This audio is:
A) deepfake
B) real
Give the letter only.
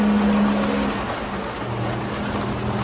B